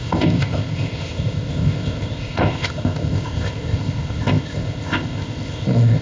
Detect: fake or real fake